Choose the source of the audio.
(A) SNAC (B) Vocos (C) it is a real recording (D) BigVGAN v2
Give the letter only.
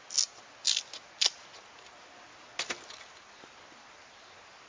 C